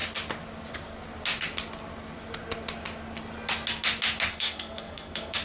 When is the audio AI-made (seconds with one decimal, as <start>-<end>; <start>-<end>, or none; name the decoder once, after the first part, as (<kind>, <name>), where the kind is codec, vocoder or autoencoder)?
4.3-5.4 (codec, SNAC)